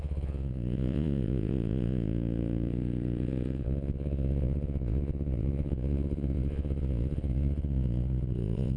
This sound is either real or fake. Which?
fake